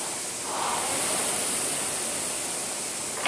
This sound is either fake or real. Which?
real